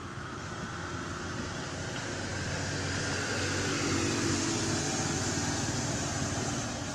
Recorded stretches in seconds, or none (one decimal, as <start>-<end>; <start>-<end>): 0.5-6.9